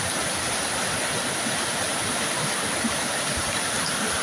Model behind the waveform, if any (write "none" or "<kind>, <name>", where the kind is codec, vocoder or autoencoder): none